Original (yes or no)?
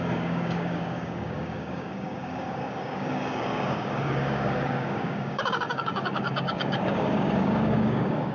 no